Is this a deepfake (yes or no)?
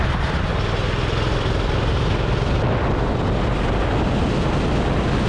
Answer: no